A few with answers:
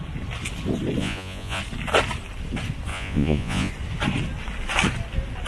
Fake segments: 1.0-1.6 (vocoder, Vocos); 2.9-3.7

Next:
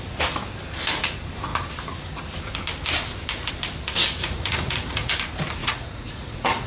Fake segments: 4.2-5.1 (vocoder, Vocos); 5.6-6.7

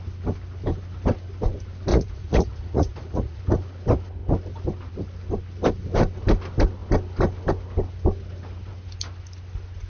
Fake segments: 1.9-3.4 (vocoder, Vocos)

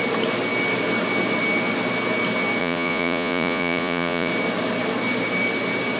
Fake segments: 2.6-4.3 (vocoder, Vocos)